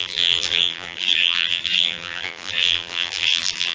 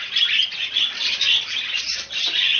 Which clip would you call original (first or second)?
second